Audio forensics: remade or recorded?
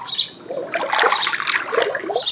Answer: recorded